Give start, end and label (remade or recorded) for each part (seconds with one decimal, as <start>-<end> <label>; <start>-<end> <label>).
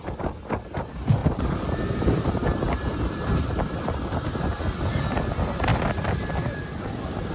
0.0-1.2 recorded; 1.2-2.3 remade; 2.3-2.9 recorded; 2.9-5.1 remade; 5.1-5.7 recorded; 5.7-7.3 remade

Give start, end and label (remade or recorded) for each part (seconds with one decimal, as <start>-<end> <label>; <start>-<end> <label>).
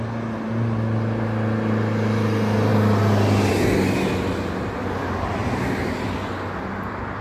0.0-7.2 recorded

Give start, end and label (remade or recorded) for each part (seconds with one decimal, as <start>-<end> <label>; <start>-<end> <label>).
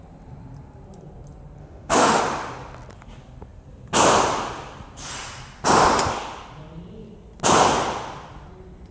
0.0-1.6 recorded; 1.6-2.2 remade; 2.2-8.9 recorded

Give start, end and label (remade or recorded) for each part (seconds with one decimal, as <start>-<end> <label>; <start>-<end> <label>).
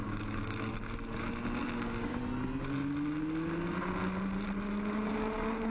0.0-0.7 remade; 0.7-1.6 recorded; 1.6-2.2 remade; 2.2-4.9 recorded; 4.9-5.7 remade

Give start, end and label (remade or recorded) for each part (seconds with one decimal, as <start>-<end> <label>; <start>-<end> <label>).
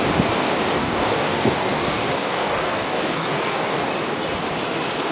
0.0-0.8 recorded; 0.8-3.9 remade; 3.9-5.1 recorded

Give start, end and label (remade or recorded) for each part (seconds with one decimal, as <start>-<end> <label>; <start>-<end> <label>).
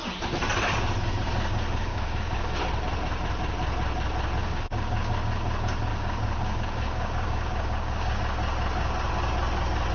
0.0-1.9 recorded; 1.9-2.5 remade; 2.5-4.4 recorded; 4.4-5.1 remade; 5.1-5.9 recorded; 5.9-8.2 remade; 8.2-9.9 recorded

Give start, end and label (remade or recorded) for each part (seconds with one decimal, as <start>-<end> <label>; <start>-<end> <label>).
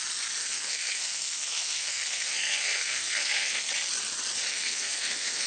0.0-0.4 recorded; 0.4-3.7 remade; 3.7-4.5 recorded; 4.5-5.5 remade